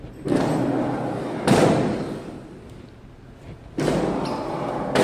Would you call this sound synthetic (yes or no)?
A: no